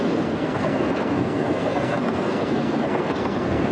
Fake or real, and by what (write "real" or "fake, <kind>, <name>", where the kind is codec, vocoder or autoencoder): fake, codec, SNAC